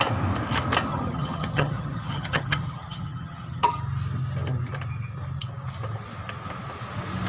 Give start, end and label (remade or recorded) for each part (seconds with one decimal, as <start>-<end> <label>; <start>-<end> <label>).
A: 0.0-0.9 recorded; 0.9-3.8 remade; 3.8-7.3 recorded